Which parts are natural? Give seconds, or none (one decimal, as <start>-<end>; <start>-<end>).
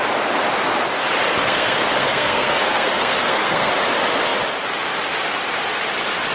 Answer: 0.0-1.4; 3.7-6.3